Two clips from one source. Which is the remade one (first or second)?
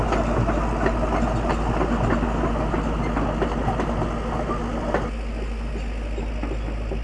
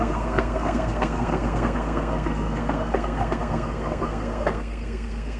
second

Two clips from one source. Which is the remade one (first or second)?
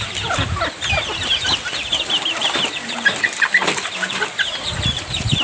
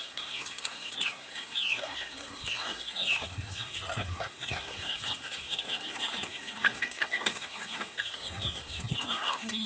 second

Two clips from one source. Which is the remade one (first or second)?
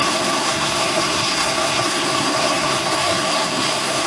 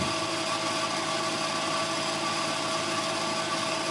first